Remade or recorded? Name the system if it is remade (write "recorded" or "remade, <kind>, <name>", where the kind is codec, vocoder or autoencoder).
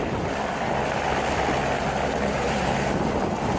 recorded